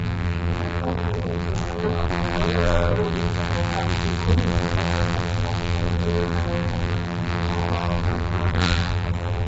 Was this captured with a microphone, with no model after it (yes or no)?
no